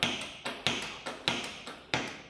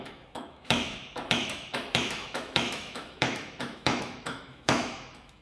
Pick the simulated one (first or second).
second